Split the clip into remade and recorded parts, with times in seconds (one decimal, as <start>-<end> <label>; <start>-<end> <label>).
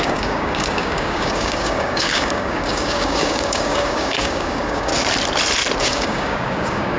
0.0-4.9 remade; 4.9-5.8 recorded; 5.8-7.0 remade